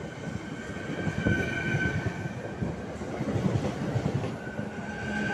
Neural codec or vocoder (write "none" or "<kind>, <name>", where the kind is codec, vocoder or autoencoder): none